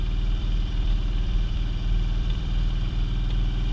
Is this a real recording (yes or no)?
no